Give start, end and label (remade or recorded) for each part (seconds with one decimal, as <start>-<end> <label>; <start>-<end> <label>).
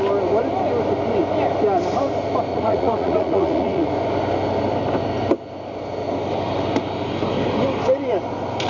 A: 0.0-2.5 recorded; 2.5-3.9 remade; 3.9-8.7 recorded